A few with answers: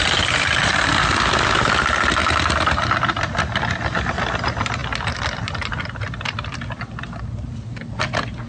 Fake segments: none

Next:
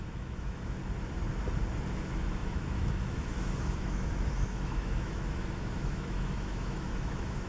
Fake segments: 0.0-0.8 (autoencoder, DAC-VAE); 1.9-7.5

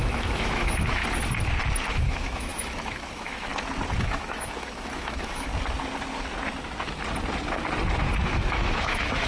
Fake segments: 0.0-1.0 (autoencoder, DAC-VAE); 1.9-3.5; 4.0-5.5; 8.4-9.3

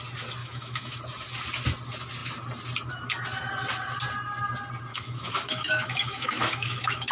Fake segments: 0.4-1.0 (autoencoder, DAC-VAE); 4.9-7.1

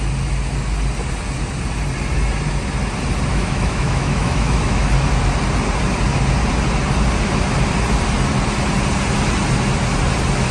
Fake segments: 3.3-4.9 (autoencoder, DAC-VAE)

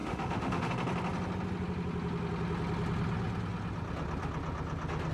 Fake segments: 0.0-0.7 (autoencoder, DAC-VAE)

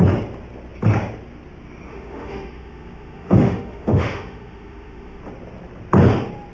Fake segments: 1.9-5.2 (autoencoder, DAC-VAE)